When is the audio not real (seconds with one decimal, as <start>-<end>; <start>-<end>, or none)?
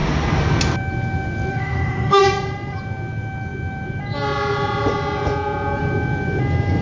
1.5-2.2